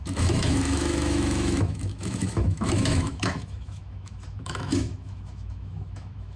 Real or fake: fake